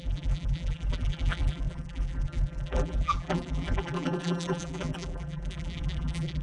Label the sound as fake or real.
fake